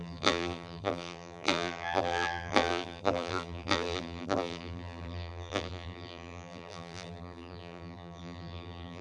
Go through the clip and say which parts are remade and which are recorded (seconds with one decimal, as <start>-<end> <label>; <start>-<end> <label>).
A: 0.0-9.0 remade